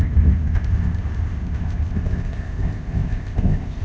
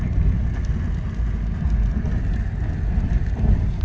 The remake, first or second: first